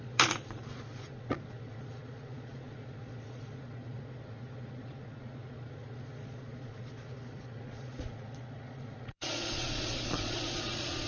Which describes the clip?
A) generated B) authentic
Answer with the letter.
A